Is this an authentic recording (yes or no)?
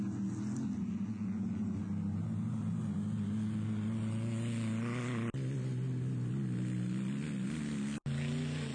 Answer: yes